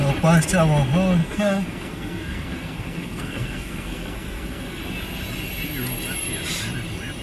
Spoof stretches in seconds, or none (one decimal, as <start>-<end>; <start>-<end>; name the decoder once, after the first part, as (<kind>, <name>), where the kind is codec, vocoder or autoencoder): 1.2-4.8 (codec, SNAC)